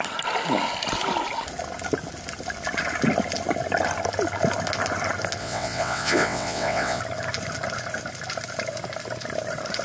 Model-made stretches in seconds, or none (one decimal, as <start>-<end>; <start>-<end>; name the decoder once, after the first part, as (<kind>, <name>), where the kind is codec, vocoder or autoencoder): 5.4-7.0 (vocoder, WaveNeXt)